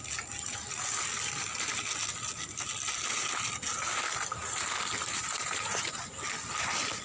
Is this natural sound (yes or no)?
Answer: yes